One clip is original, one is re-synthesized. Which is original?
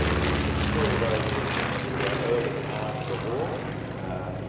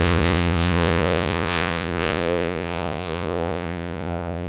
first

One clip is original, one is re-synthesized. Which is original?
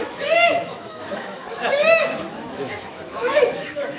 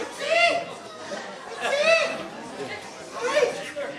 second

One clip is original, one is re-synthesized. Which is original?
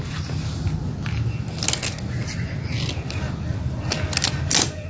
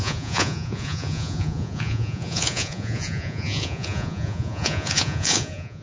first